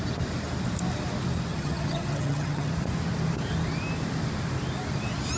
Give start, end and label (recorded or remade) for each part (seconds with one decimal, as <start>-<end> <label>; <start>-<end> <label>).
0.0-1.5 recorded; 1.5-2.7 remade; 2.7-5.4 recorded